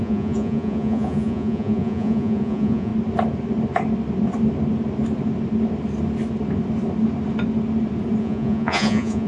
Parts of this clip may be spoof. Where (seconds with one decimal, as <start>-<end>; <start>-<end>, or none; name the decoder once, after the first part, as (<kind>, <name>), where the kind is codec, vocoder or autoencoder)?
0.0-2.9 (vocoder, Vocos); 8.2-9.3